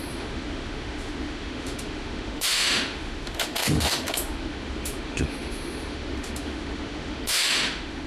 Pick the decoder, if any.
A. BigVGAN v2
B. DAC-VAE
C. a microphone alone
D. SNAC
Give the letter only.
B